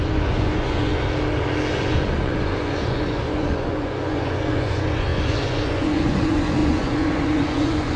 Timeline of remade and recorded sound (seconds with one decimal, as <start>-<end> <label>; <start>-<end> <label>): 0.0-0.9 remade; 0.9-1.7 recorded; 1.7-8.0 remade